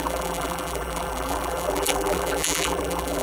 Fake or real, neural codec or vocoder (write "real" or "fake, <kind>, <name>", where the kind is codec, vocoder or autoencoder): fake, vocoder, BigVGAN v2